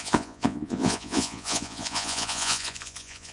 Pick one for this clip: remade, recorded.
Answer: remade